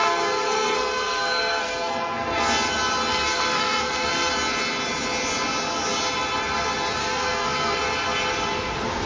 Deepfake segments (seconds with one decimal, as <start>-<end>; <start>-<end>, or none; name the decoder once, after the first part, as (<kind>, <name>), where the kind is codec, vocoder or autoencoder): 0.0-2.4 (codec, SNAC); 3.1-4.3; 7.0-7.8

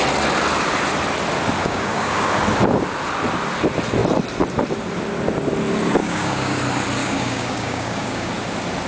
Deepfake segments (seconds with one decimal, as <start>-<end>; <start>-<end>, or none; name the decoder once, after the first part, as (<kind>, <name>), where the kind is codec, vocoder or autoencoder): 1.6-2.3 (codec, DAC); 6.0-6.6; 7.0-8.3

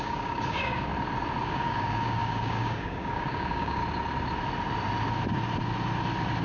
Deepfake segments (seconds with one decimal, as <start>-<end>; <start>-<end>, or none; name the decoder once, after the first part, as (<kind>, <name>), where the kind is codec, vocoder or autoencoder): 0.0-0.9 (codec, DAC); 1.4-3.8

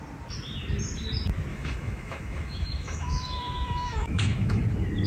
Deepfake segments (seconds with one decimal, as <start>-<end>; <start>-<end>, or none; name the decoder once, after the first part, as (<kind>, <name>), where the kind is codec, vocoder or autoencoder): 1.5-4.6 (autoencoder, DAC-VAE)

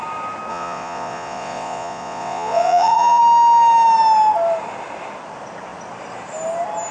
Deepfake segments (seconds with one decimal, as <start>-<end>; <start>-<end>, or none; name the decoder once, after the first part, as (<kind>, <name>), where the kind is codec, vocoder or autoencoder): 0.5-3.2 (vocoder, Vocos)

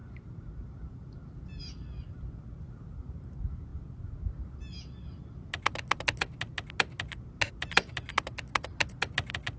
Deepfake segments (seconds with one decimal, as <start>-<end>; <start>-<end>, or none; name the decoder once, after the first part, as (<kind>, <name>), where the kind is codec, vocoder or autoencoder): none

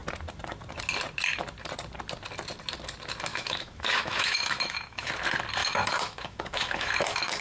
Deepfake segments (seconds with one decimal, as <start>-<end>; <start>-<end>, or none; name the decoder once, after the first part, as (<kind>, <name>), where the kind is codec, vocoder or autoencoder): 3.3-5.1 (autoencoder, DAC-VAE); 5.6-7.4

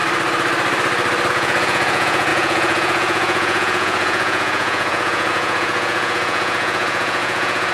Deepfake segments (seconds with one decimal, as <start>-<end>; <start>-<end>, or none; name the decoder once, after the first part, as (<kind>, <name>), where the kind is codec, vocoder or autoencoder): 1.3-7.7 (vocoder, Vocos)